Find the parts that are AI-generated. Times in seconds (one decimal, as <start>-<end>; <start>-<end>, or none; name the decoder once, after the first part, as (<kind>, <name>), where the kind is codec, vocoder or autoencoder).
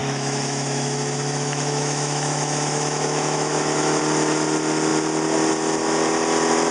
0.0-4.0 (autoencoder, DAC-VAE)